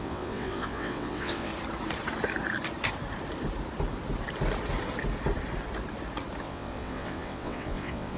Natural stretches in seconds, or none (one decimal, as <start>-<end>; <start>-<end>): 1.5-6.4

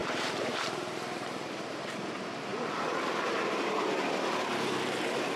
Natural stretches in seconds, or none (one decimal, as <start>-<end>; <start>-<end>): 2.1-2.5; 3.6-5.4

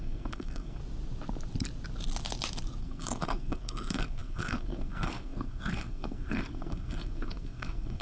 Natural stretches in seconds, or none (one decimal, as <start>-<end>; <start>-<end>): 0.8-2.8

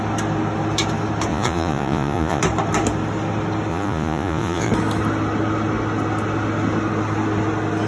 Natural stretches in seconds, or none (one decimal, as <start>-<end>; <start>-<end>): 0.0-1.3; 2.4-3.7; 4.7-7.9